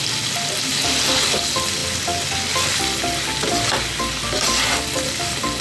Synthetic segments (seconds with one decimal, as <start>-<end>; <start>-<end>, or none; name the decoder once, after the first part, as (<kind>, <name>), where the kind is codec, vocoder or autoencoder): none